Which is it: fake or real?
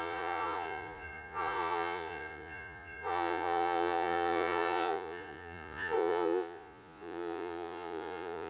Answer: fake